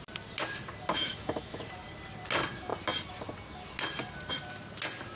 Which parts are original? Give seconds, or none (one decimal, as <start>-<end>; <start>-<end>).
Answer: 0.0-0.9; 1.6-5.2

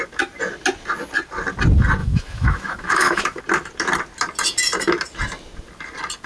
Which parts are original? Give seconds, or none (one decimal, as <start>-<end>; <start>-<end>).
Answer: 0.0-2.0; 3.4-6.3

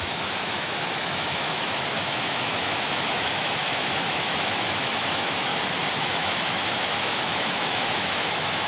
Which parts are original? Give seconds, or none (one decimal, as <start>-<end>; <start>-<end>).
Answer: 5.5-6.0